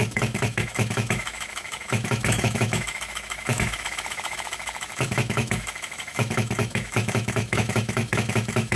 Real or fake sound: fake